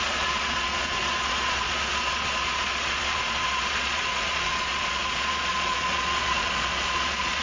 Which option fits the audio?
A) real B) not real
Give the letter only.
B